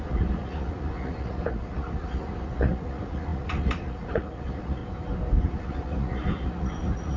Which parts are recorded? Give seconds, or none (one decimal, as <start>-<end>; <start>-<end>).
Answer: 4.8-5.4

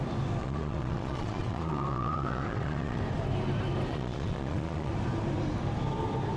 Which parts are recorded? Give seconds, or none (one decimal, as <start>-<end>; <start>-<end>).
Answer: 0.0-0.4; 3.0-3.9; 4.9-6.4

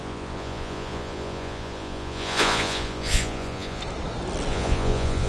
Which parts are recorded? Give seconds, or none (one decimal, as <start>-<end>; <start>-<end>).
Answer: 3.8-4.5

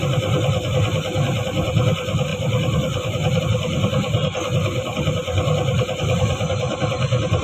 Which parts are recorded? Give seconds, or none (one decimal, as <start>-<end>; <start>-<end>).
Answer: 0.0-7.4

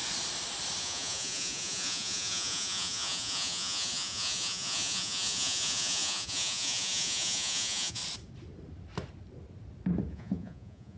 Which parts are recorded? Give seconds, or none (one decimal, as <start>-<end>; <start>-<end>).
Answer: 0.0-0.8; 8.0-10.1

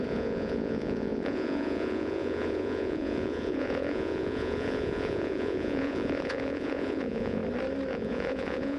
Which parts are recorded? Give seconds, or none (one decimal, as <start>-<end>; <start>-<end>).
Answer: 7.4-7.9

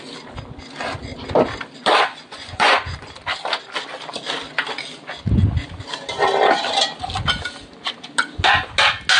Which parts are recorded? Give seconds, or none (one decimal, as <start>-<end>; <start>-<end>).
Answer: 0.0-2.1; 3.1-9.2

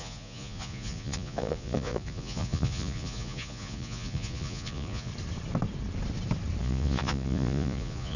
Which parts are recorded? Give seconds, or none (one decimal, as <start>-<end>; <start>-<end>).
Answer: 5.1-6.6